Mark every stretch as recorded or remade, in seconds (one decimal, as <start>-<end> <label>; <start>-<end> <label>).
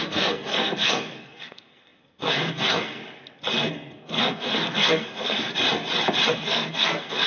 0.0-3.0 remade; 3.0-3.7 recorded; 3.7-5.5 remade; 5.5-6.3 recorded; 6.3-7.3 remade